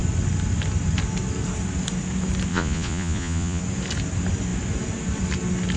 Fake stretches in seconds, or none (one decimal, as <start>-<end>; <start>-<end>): 2.5-3.6